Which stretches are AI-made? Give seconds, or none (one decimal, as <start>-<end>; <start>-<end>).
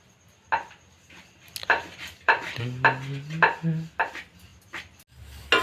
1.6-2.6